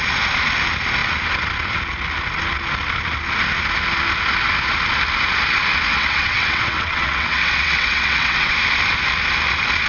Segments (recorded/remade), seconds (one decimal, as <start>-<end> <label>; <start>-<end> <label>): 0.0-5.9 recorded; 5.9-8.5 remade; 8.5-9.9 recorded

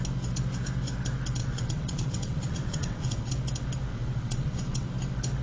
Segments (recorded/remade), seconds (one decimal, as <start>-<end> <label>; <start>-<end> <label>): 0.0-1.4 recorded; 1.4-3.3 remade; 3.3-3.9 recorded; 3.9-4.9 remade; 4.9-5.4 recorded

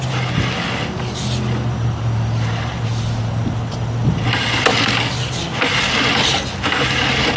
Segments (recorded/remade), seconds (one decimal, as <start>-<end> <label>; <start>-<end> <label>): 0.0-7.4 recorded